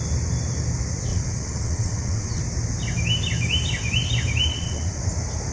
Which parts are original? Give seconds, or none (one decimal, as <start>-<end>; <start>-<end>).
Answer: 0.0-1.1; 2.4-4.5; 5.0-5.5